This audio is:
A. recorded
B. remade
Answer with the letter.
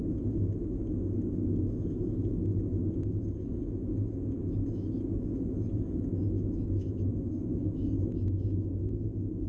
B